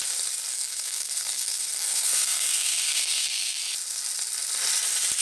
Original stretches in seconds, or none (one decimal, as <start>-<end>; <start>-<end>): 0.0-0.5; 3.6-5.2